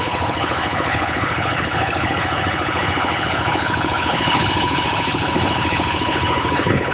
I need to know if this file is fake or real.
fake